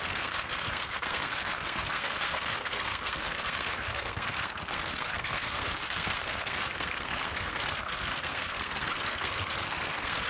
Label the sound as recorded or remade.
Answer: remade